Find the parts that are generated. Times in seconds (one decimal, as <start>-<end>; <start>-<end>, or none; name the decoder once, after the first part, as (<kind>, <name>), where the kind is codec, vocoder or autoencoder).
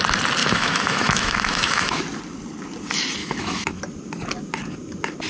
0.4-2.0 (autoencoder, DAC-VAE); 3.2-3.8